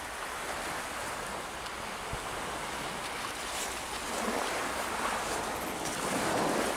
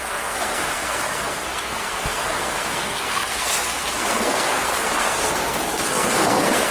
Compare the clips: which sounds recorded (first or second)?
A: first